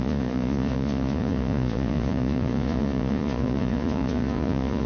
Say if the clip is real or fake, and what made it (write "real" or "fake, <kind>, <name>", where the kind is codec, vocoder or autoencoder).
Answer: fake, vocoder, Vocos